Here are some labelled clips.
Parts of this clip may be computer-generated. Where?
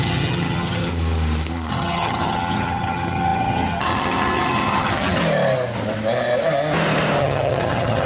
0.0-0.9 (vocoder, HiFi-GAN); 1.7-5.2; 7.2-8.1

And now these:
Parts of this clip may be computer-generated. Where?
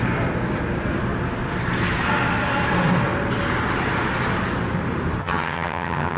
5.2-6.2 (vocoder, HiFi-GAN)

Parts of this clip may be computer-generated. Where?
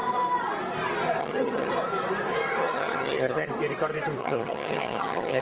1.2-1.7 (vocoder, HiFi-GAN); 2.6-3.5; 4.2-5.4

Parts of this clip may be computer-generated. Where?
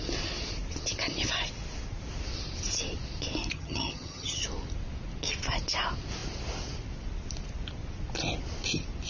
3.5-4.4 (vocoder, HiFi-GAN)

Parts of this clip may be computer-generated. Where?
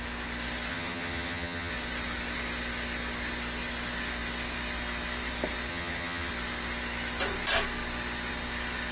0.7-1.7 (vocoder, HiFi-GAN); 5.7-6.3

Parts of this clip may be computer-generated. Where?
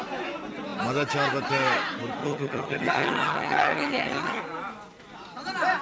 2.2-4.4 (vocoder, HiFi-GAN)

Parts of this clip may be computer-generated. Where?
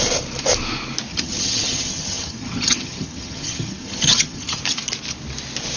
1.1-4.6 (vocoder, HiFi-GAN)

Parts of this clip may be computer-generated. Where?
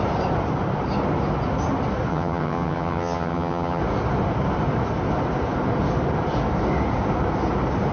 2.1-3.8 (vocoder, HiFi-GAN)